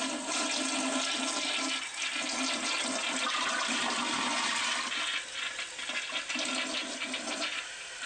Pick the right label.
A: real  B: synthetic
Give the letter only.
A